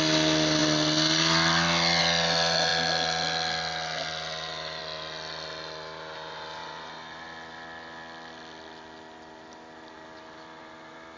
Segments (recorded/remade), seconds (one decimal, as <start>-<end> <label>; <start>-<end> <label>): 0.0-6.6 recorded; 6.6-7.2 remade; 7.2-11.2 recorded